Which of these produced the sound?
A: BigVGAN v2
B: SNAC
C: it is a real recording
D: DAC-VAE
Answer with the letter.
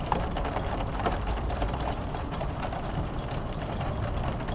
A